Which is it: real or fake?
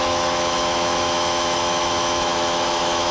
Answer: fake